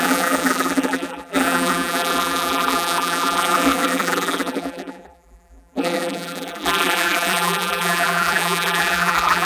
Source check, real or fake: fake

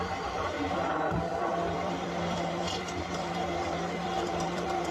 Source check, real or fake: fake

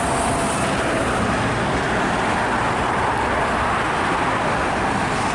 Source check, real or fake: real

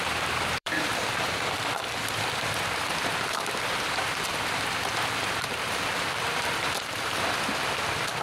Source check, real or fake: fake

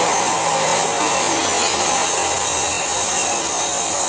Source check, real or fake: real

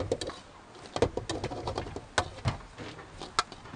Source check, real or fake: real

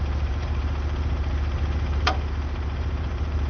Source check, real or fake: fake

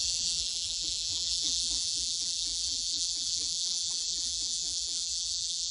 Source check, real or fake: fake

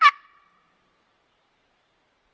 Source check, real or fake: fake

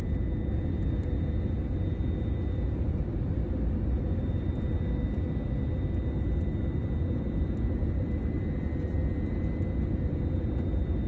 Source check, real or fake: real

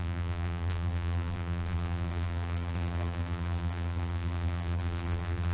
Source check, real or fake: fake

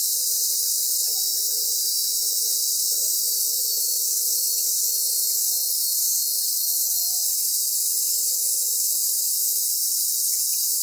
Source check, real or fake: real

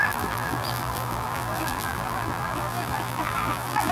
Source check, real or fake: fake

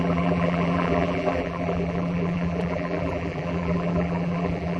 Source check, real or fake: fake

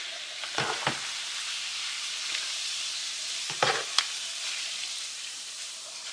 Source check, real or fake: fake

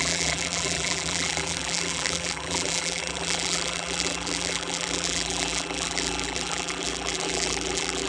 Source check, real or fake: fake